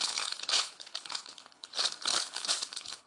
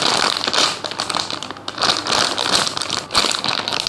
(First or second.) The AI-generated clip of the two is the first